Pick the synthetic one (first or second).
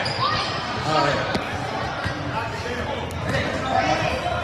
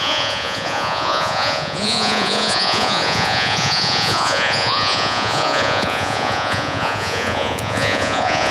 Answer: second